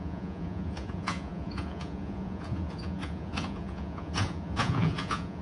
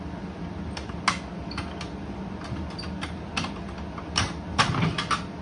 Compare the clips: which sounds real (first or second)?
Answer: second